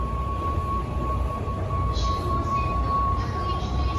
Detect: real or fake fake